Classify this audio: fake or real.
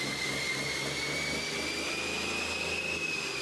real